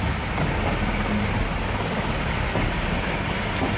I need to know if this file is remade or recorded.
recorded